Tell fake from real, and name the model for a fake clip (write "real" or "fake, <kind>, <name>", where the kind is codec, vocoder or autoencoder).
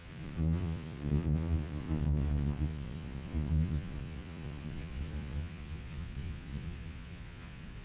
fake, vocoder, Vocos